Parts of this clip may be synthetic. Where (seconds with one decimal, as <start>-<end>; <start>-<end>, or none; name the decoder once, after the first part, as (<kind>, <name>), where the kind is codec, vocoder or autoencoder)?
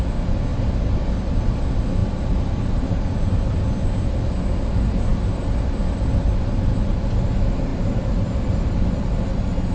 0.5-1.0 (vocoder, BigVGAN v2); 2.0-3.2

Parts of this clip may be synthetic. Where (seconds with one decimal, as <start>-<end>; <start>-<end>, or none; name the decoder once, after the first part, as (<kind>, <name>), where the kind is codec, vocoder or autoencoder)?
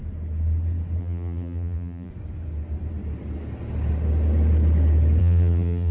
1.0-2.1 (vocoder, BigVGAN v2); 5.2-5.9